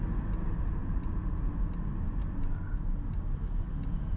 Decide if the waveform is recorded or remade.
recorded